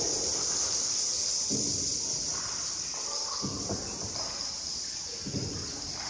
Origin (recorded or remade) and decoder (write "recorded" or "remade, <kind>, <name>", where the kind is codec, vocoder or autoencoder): recorded